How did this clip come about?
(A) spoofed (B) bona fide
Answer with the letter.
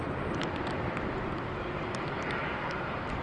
B